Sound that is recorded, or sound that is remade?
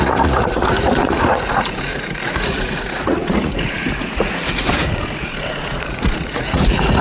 remade